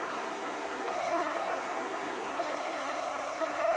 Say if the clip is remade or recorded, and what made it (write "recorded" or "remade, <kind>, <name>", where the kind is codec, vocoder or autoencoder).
remade, codec, SNAC